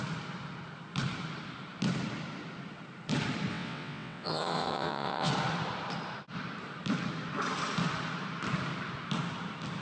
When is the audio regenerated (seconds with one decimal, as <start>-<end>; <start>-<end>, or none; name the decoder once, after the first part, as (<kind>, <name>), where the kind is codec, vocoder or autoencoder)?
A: 3.5-5.3 (vocoder, WaveNeXt)

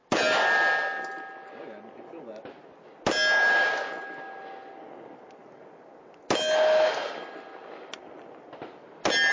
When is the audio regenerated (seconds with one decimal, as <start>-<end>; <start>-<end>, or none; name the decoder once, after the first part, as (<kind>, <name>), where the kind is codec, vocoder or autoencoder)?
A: none

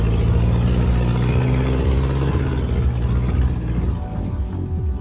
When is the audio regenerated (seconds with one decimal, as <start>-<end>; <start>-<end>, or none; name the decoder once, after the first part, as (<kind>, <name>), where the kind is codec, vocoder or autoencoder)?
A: none

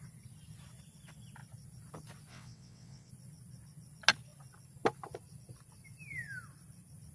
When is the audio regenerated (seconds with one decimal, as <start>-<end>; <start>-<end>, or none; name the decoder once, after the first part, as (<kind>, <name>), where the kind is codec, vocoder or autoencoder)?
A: 2.3-3.1 (vocoder, WaveNeXt)

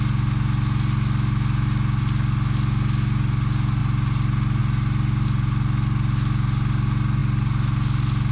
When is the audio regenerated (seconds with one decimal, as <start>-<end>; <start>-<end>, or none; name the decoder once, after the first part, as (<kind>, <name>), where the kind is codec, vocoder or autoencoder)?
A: none

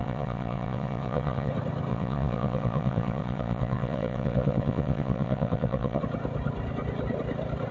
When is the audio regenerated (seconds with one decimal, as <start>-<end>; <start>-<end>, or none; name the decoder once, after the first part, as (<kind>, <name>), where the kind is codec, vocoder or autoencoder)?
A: 0.0-1.5 (vocoder, WaveNeXt); 1.9-6.0

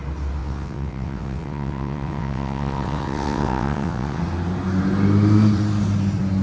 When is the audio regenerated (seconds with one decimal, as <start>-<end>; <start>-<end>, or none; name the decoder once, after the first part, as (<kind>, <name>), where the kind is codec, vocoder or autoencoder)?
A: 0.4-4.2 (vocoder, WaveNeXt)

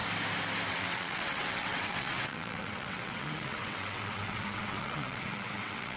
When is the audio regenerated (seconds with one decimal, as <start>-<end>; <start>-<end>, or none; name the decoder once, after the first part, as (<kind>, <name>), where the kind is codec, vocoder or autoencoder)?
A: 0.7-6.0 (vocoder, WaveNeXt)